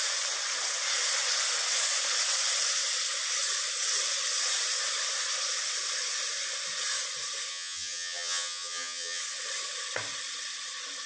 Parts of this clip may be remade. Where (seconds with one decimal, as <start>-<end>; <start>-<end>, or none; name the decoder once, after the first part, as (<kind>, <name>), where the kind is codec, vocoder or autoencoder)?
7.5-9.2 (vocoder, HiFi-GAN)